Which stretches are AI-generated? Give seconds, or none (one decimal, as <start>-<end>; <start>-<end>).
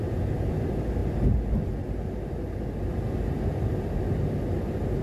none